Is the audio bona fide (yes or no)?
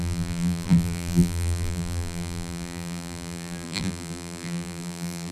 no